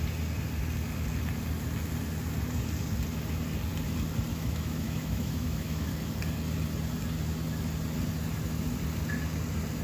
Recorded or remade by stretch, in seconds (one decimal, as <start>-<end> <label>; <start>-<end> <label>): 0.0-4.3 recorded; 4.3-5.9 remade; 5.9-9.8 recorded